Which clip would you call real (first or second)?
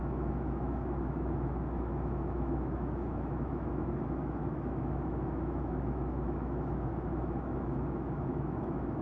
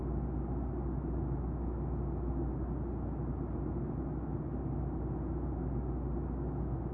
second